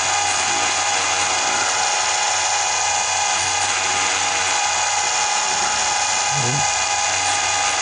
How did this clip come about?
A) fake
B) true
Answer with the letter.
B